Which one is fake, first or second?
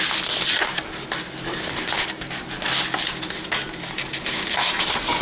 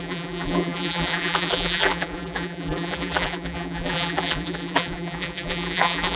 second